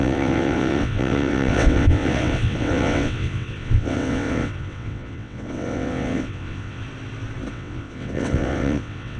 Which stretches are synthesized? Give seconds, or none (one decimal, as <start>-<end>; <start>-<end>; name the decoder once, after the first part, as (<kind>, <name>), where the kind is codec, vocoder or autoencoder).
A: 0.0-6.8 (vocoder, WaveNeXt); 7.5-9.2